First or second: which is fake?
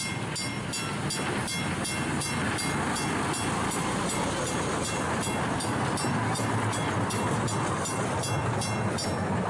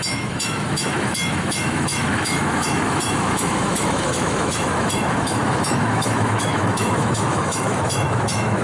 second